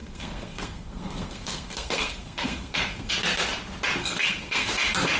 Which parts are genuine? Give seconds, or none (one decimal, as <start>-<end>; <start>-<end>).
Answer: 3.1-4.0; 4.7-5.2